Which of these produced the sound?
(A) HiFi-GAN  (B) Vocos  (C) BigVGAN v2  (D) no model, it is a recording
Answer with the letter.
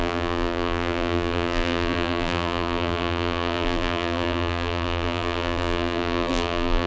C